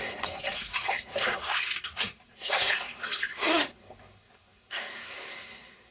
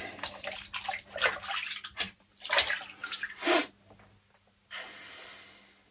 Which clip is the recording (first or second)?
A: second